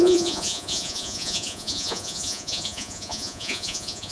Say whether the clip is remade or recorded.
remade